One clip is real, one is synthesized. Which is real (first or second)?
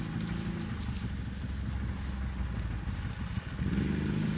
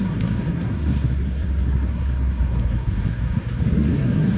first